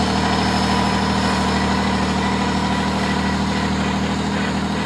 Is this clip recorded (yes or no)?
yes